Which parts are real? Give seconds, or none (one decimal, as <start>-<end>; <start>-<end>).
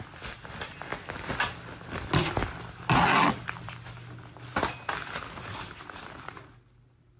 0.0-7.2